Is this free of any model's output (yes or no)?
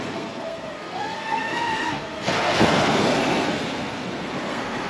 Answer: no